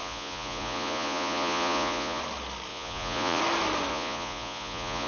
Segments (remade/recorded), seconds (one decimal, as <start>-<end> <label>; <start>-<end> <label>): 0.0-2.2 remade; 2.2-2.7 recorded; 2.7-3.4 remade; 3.4-3.9 recorded; 3.9-5.1 remade